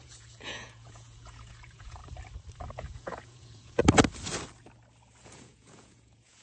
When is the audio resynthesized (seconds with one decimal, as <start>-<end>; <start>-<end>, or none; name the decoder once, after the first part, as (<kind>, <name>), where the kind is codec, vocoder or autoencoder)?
0.0-2.0 (vocoder, Vocos); 2.7-3.8; 5.2-6.4